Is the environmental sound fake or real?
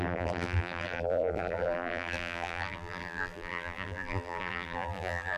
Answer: fake